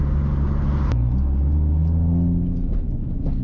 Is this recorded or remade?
recorded